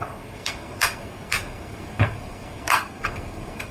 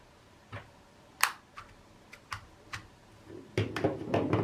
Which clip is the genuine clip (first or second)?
second